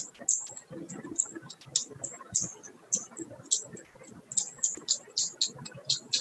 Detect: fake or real real